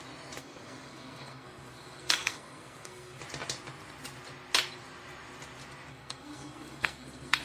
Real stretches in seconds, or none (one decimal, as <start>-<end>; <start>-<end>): 0.0-0.4; 3.2-5.9